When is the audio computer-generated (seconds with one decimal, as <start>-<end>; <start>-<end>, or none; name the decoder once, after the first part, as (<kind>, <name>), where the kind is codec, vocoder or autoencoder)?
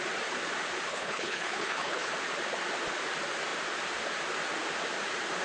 0.9-2.1 (codec, HILCodec)